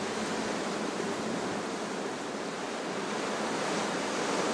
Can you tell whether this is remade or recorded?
recorded